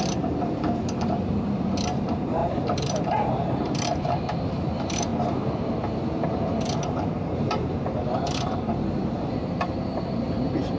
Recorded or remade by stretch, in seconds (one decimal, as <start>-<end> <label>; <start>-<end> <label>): 0.0-5.1 remade; 5.1-6.6 recorded; 6.6-10.8 remade